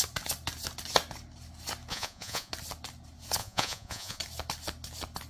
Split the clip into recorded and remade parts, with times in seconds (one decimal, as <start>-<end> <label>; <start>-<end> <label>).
0.0-1.9 recorded; 1.9-2.5 remade; 2.5-3.4 recorded; 3.4-4.2 remade; 4.2-5.3 recorded